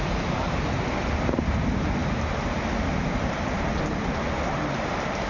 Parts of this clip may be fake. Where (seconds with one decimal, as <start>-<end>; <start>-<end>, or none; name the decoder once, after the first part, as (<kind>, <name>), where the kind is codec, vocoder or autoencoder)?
1.0-1.5 (vocoder, BigVGAN v2); 2.0-4.2